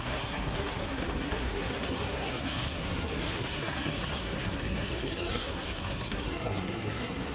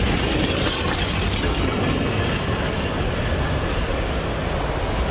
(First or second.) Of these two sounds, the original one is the second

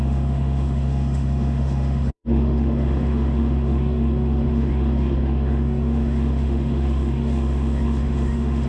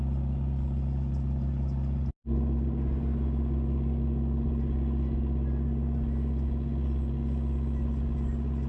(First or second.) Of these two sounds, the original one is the second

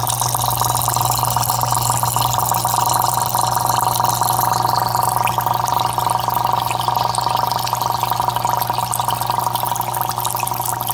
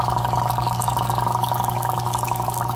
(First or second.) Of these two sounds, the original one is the first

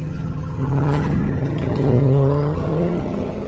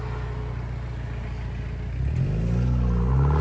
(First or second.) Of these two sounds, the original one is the second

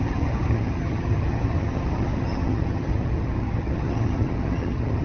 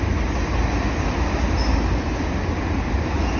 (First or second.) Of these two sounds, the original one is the second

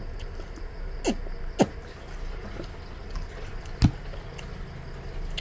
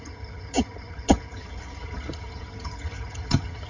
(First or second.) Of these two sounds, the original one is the first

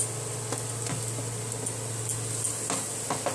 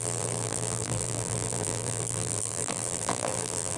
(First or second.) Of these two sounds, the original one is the first